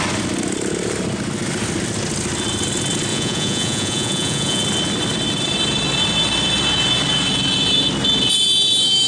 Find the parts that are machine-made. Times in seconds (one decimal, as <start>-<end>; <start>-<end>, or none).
3.1-4.6